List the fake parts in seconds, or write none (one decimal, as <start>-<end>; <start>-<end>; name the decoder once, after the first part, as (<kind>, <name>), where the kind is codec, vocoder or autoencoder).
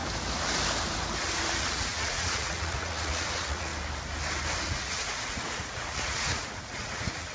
1.5-3.7 (vocoder, Vocos); 4.6-7.3